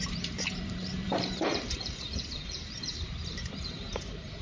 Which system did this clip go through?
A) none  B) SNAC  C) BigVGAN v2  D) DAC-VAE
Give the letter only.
C